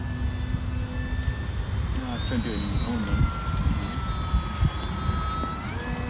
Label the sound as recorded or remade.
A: recorded